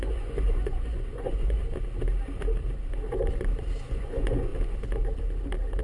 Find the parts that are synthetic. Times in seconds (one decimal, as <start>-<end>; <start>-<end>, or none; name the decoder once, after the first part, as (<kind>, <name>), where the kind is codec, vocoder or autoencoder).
0.0-1.6 (vocoder, Vocos); 3.8-4.5